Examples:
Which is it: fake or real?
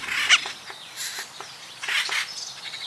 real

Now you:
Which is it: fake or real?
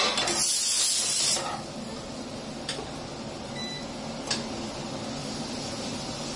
real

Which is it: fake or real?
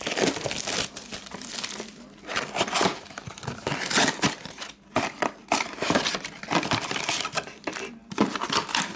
fake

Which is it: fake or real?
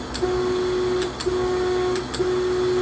real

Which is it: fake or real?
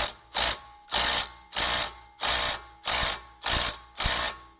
real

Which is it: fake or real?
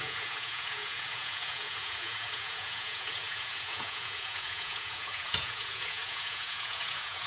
fake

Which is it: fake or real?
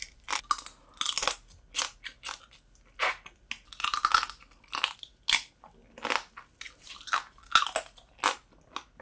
real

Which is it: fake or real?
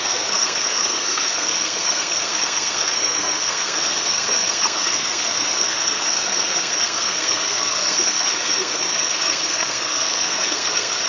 fake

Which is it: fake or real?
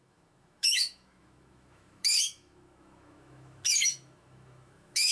fake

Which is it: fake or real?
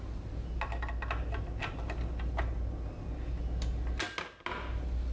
real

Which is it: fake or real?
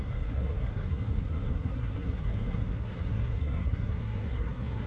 fake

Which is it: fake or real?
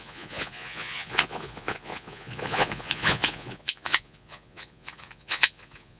fake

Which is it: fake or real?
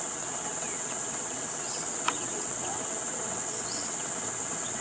fake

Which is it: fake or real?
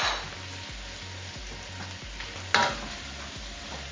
real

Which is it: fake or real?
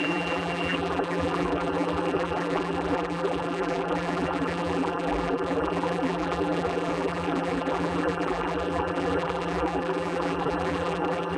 fake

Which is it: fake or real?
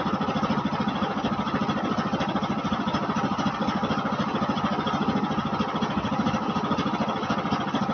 real